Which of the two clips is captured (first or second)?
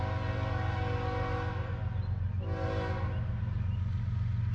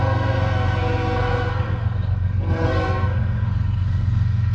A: first